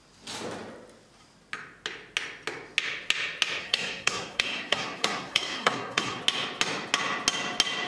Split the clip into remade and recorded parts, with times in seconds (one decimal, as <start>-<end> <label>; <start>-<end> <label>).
0.0-3.6 recorded; 3.6-6.2 remade; 6.2-7.9 recorded